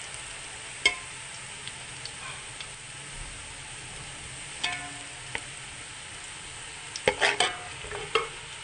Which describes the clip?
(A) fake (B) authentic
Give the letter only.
B